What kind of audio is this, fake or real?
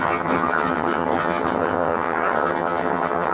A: fake